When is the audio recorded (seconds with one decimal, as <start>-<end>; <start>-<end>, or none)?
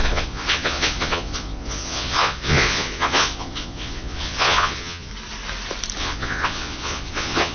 5.1-6.0